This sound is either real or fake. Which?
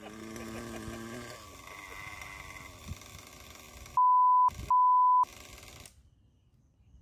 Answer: real